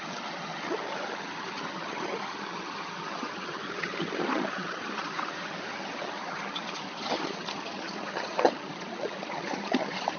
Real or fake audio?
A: fake